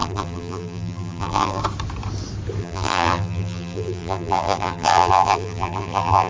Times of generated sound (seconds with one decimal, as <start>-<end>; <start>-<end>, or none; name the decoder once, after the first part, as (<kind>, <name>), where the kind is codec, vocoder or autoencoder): 0.0-1.6 (vocoder, BigVGAN v2); 2.6-6.3